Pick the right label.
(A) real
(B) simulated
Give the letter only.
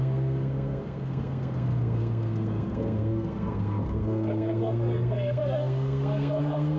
B